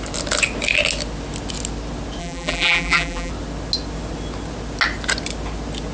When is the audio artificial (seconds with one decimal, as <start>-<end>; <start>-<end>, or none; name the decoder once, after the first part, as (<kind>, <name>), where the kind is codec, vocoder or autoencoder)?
2.2-3.3 (vocoder, BigVGAN v2)